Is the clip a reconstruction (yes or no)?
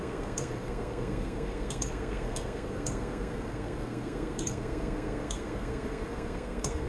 yes